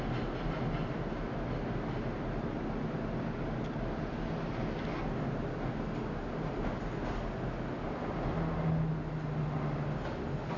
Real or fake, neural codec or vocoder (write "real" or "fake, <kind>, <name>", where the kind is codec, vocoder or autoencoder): real